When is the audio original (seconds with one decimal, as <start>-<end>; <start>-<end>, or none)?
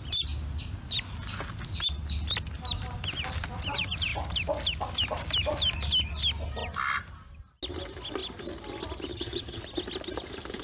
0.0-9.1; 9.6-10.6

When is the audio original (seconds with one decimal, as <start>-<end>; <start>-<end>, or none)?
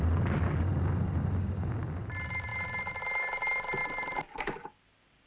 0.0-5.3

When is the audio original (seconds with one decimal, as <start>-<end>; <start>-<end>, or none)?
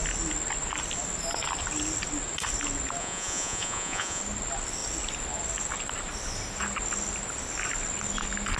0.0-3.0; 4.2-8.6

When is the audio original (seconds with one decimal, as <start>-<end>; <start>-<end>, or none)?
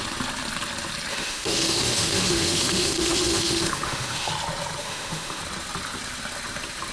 0.0-1.1; 4.3-4.8; 5.4-6.9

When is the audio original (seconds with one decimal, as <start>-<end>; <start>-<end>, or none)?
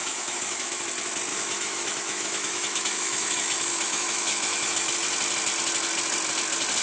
0.8-1.3; 4.9-6.8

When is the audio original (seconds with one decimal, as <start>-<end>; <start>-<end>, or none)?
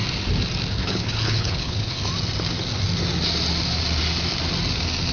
0.0-0.7; 2.0-5.1